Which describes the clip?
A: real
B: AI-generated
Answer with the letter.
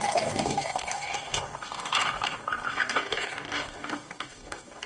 B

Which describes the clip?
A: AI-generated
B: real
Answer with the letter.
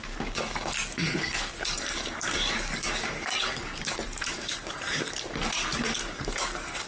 A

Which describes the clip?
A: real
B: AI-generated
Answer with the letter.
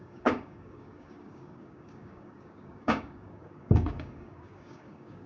B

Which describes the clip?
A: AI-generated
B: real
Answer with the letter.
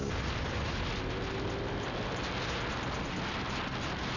B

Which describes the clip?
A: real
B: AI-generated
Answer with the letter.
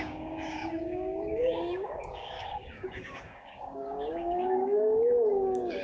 B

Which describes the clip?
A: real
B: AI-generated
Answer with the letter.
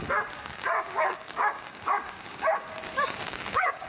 B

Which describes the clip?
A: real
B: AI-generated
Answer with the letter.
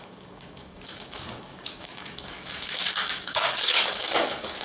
B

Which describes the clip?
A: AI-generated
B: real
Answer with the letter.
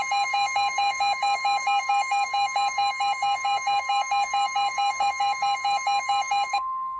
A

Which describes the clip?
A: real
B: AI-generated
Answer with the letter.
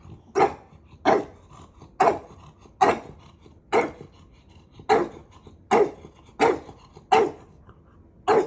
A